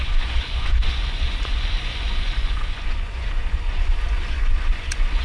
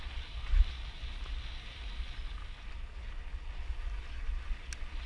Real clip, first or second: second